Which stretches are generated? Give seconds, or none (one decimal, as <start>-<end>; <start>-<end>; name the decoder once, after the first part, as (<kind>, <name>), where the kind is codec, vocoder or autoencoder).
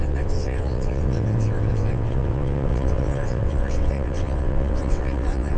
0.0-5.6 (vocoder, WaveNeXt)